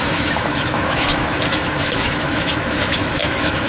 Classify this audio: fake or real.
fake